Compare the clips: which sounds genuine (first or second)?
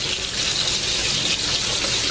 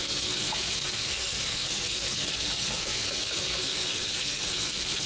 first